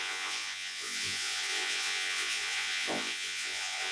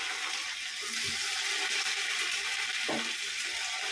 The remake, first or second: first